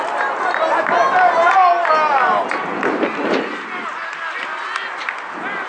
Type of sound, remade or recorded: recorded